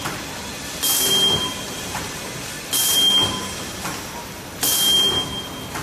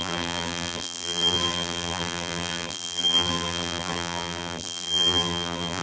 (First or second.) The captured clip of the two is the first